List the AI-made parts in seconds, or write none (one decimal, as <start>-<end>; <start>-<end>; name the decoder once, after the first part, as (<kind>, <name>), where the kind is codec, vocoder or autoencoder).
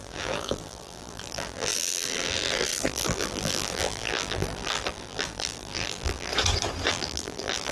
0.0-6.3 (vocoder, BigVGAN v2); 6.9-7.7